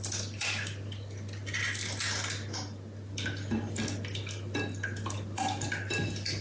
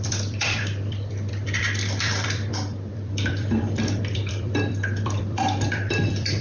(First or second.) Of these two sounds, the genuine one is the first